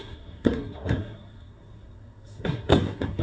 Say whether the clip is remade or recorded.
remade